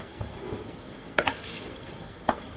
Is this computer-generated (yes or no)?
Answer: yes